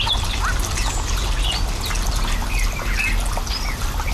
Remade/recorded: recorded